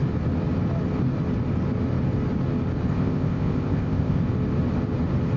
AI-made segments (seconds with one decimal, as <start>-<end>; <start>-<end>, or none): 2.9-4.2